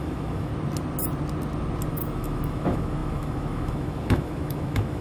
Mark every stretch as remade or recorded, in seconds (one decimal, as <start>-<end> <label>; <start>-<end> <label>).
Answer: 0.0-0.5 remade; 0.5-1.9 recorded; 1.9-5.0 remade